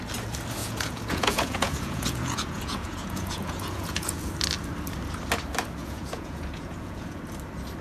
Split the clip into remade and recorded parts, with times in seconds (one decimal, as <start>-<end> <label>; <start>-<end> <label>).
0.0-0.6 recorded; 0.6-4.3 remade; 4.3-5.8 recorded; 5.8-7.2 remade; 7.2-7.8 recorded